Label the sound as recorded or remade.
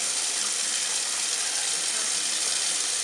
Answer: recorded